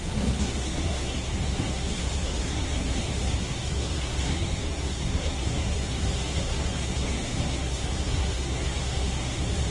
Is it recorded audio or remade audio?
remade